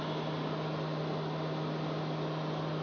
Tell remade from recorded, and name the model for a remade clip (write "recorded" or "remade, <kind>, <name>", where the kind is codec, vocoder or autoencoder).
recorded